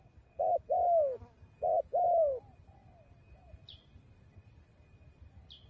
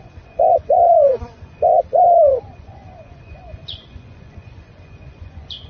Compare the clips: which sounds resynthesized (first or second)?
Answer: second